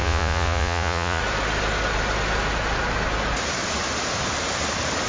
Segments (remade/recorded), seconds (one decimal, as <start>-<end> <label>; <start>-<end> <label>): 0.0-1.2 remade; 1.2-5.1 recorded